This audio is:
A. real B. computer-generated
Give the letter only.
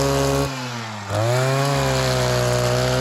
A